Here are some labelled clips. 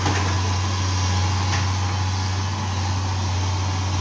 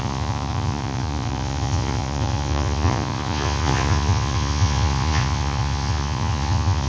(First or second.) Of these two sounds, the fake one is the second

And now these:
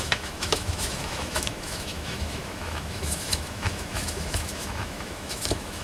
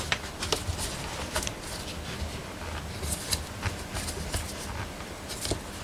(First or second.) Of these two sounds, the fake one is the first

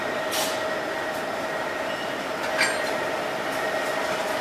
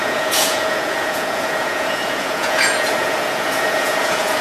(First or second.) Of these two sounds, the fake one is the second